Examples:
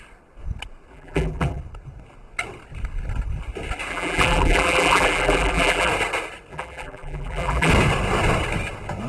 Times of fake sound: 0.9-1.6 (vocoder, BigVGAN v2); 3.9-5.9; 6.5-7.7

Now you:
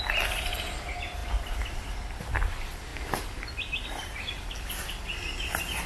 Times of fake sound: none

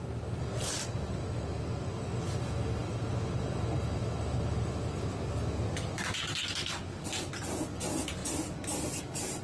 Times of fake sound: none

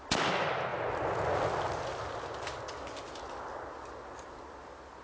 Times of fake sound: none

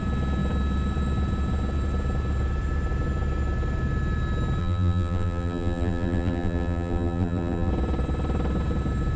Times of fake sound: 4.6-7.7 (vocoder, BigVGAN v2)